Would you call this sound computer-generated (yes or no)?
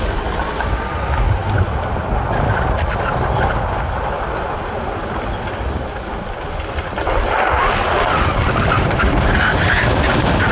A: no